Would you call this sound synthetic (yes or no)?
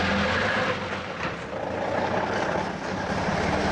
no